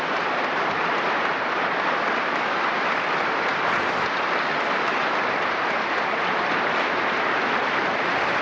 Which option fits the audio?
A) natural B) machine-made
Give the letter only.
A